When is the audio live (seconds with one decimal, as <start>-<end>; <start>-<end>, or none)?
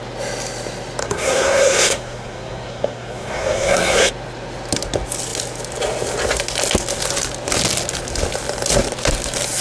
0.0-1.0; 4.1-9.6